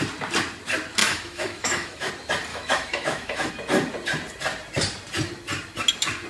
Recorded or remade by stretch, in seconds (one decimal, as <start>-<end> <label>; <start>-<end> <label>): 0.0-1.0 recorded; 1.0-2.1 remade; 2.1-2.5 recorded; 2.5-3.5 remade; 3.5-6.3 recorded